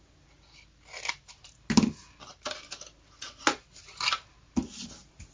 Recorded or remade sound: recorded